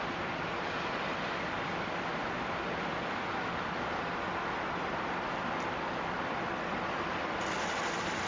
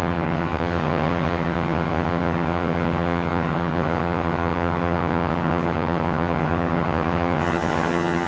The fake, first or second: second